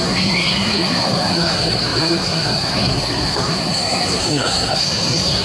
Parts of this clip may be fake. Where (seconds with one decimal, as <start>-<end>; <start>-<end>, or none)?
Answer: 0.0-5.4